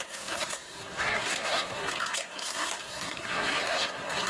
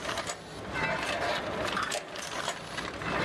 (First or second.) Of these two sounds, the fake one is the first